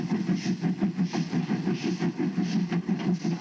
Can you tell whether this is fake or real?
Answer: real